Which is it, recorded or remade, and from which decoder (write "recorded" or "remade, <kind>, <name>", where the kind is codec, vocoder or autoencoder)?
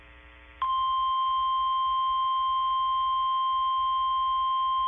recorded